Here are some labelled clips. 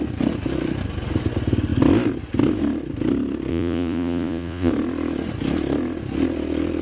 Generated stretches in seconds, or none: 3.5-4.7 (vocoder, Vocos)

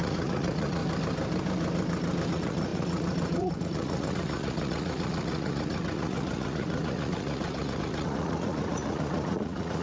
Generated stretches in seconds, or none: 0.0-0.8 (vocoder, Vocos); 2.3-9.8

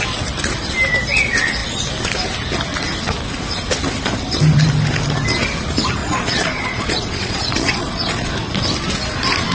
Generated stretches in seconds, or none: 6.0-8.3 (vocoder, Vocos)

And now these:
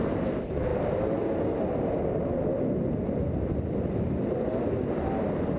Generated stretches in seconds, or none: none